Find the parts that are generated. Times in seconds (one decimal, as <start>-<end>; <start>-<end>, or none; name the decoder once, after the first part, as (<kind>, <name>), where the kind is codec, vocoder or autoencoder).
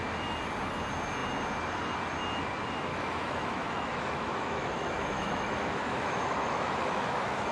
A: 2.9-7.5 (autoencoder, DAC-VAE)